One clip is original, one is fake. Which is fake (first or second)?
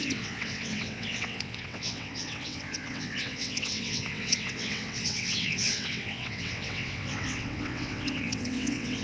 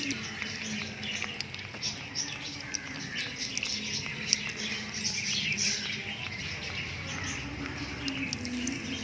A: first